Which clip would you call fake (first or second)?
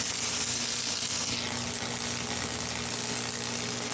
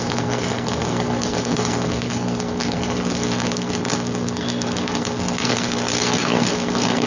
second